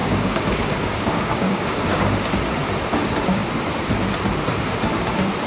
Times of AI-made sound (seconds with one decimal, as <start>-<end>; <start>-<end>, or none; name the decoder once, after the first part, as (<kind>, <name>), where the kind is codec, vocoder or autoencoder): 0.0-2.3 (codec, DAC)

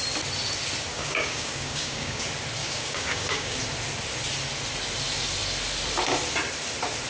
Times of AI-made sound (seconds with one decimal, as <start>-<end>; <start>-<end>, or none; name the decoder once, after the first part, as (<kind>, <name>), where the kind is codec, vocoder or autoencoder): 0.9-2.2 (codec, DAC); 2.6-3.6

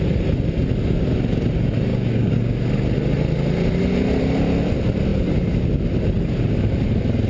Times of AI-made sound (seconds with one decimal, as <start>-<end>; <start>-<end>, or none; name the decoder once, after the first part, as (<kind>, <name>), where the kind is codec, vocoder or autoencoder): 1.9-2.6 (codec, DAC)